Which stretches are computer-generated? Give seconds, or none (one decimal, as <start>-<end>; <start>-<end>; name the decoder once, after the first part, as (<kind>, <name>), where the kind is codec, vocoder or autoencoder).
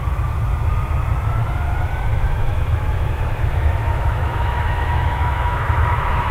2.1-6.3 (autoencoder, DAC-VAE)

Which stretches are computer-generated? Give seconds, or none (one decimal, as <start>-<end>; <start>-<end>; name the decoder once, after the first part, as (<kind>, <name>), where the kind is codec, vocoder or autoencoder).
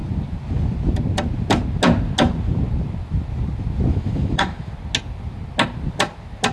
3.9-4.7 (autoencoder, DAC-VAE)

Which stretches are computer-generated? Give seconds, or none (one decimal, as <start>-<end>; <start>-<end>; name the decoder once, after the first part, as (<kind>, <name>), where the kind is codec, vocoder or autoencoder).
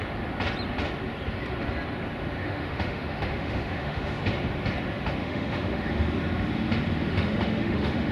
2.4-4.2 (autoencoder, DAC-VAE); 5.2-5.9; 7.1-8.1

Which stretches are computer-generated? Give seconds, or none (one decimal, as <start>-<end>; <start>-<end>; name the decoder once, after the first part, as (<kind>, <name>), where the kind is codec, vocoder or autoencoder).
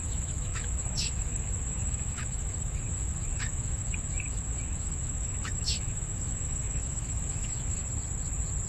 0.0-7.8 (autoencoder, DAC-VAE)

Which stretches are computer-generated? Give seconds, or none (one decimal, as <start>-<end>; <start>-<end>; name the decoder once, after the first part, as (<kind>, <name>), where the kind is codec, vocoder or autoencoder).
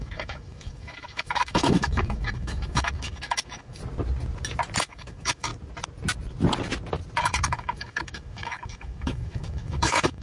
0.0-3.8 (autoencoder, DAC-VAE); 4.8-5.5; 7.2-10.2